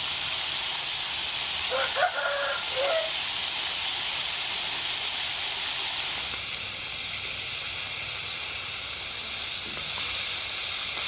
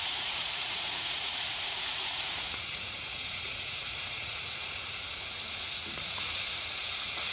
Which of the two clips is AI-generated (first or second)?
second